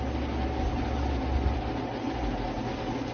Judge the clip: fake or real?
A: real